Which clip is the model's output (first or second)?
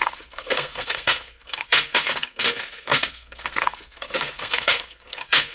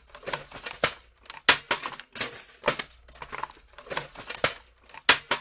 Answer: first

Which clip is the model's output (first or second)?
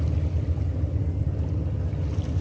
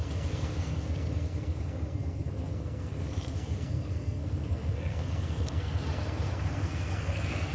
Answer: second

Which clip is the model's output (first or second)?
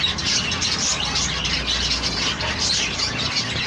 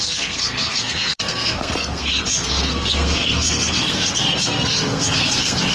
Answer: second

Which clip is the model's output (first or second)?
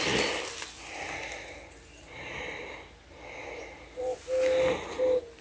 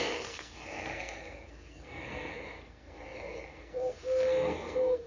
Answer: second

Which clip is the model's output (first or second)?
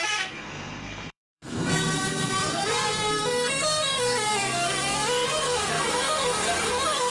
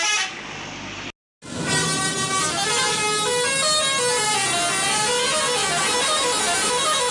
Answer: first